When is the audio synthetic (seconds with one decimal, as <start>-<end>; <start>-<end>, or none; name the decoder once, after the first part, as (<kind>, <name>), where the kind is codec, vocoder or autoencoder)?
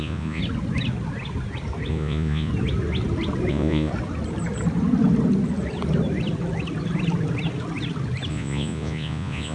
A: 0.0-0.4 (vocoder, Vocos); 1.9-2.5; 3.5-3.9; 8.3-9.5